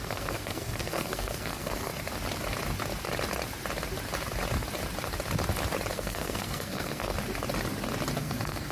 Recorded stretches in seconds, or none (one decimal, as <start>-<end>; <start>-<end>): 1.9-5.9; 7.1-8.2